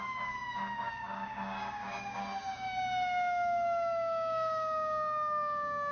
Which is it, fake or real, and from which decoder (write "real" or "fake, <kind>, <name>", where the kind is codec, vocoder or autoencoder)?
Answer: fake, codec, DAC